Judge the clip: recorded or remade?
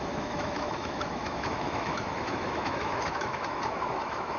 remade